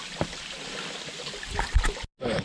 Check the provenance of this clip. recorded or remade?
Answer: recorded